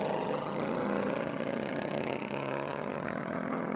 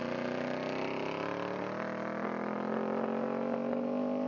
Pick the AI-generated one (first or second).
first